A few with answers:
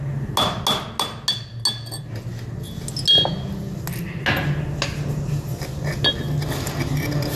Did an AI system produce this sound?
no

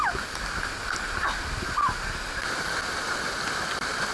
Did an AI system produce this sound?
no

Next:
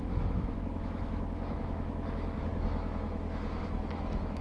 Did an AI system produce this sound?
yes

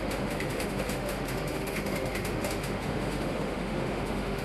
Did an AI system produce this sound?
yes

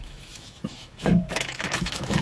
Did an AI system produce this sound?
yes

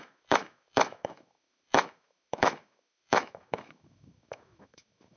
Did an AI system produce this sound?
yes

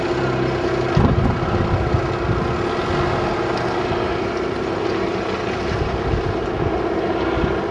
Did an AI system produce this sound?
no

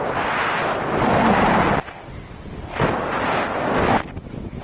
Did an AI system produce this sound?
no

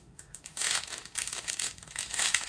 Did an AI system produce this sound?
yes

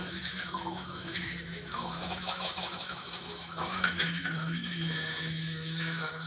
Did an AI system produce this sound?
yes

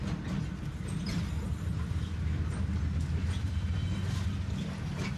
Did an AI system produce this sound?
no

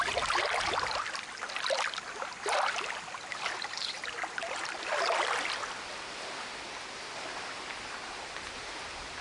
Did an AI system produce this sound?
no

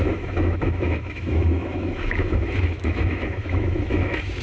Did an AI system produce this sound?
yes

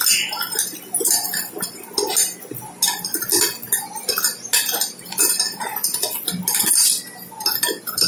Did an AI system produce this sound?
no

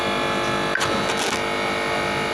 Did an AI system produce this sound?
no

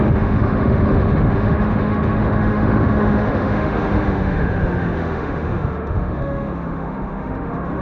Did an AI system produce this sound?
yes